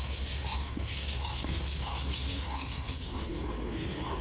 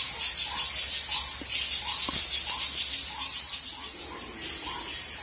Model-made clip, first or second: first